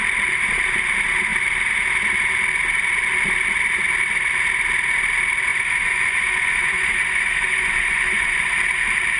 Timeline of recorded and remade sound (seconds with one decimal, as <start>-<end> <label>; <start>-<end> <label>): 0.0-5.5 recorded; 5.5-8.5 remade; 8.5-9.2 recorded